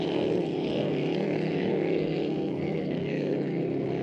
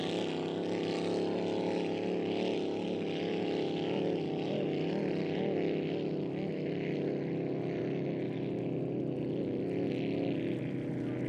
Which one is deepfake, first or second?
first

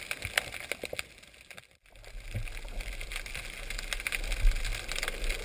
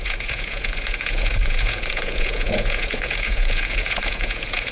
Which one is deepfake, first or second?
second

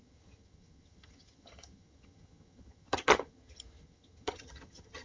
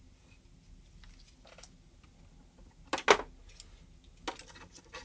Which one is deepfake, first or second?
first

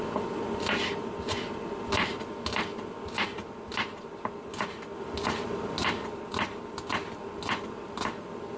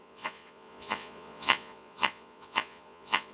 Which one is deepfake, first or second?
second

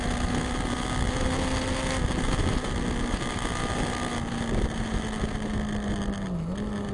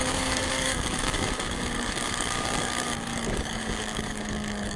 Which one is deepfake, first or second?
second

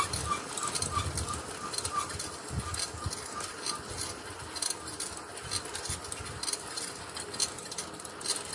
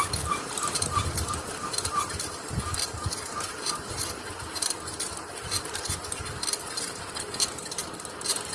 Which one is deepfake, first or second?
second